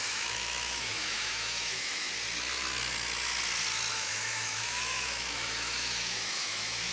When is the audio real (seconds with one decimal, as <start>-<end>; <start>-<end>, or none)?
2.1-3.9